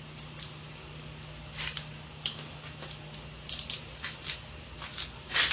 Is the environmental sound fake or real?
real